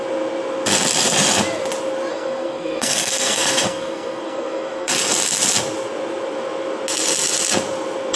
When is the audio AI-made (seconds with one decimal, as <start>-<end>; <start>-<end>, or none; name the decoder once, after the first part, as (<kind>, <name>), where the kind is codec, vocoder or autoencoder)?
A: 2.1-4.9 (codec, SNAC)